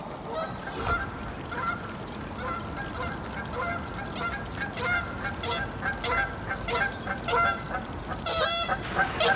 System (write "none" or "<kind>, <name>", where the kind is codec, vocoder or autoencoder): none